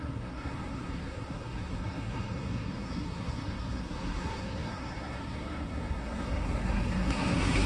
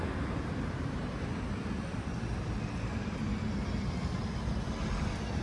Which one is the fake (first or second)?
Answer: first